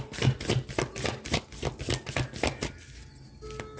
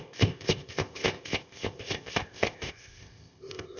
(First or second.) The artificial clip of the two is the second